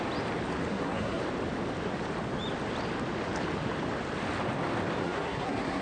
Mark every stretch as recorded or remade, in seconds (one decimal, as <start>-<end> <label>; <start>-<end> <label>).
0.0-0.7 recorded; 0.7-1.2 remade; 1.2-5.0 recorded; 5.0-5.8 remade

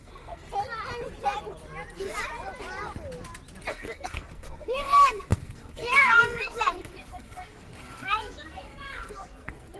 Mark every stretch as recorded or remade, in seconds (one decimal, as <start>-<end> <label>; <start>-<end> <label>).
0.0-0.5 remade; 0.5-3.7 recorded; 3.7-9.8 remade